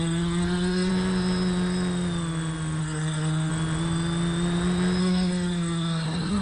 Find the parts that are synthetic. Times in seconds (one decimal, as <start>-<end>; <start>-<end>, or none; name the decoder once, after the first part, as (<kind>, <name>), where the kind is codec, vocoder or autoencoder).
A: 0.0-0.9 (codec, SNAC); 2.8-3.5; 5.0-6.4